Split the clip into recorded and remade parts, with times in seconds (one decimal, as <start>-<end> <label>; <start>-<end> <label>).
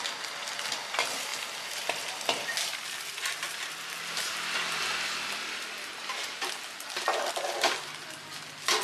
0.0-8.8 recorded